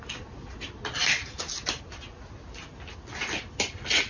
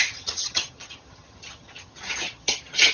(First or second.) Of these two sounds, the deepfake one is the second